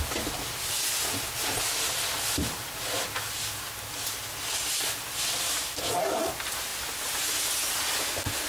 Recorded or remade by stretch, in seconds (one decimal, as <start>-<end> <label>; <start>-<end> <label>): 0.0-8.5 recorded